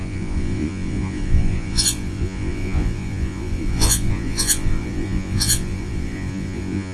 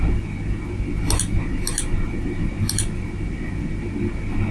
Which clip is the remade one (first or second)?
first